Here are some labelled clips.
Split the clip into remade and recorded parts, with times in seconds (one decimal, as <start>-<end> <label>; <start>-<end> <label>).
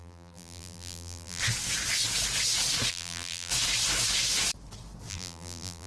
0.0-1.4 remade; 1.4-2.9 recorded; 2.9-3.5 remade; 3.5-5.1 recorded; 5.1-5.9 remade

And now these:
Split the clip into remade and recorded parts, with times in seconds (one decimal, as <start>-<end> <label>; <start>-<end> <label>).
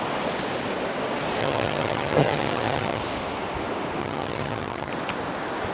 0.0-1.4 recorded; 1.4-3.0 remade; 3.0-4.0 recorded; 4.0-4.9 remade; 4.9-5.7 recorded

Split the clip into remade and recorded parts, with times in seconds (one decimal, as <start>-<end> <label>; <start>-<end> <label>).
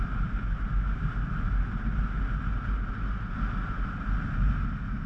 0.0-5.1 recorded